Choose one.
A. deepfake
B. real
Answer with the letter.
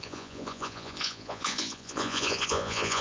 A